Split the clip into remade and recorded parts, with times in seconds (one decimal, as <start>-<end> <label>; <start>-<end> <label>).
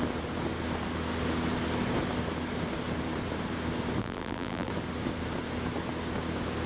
0.0-4.0 recorded; 4.0-4.7 remade; 4.7-6.7 recorded